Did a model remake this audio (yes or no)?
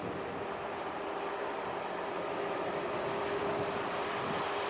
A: no